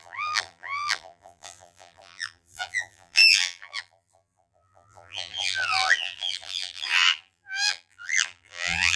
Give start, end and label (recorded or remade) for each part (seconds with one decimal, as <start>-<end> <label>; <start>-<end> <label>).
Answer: 0.0-9.0 remade